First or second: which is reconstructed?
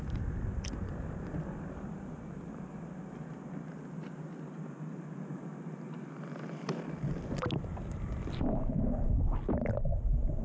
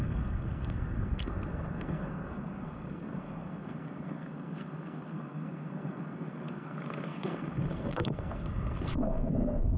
second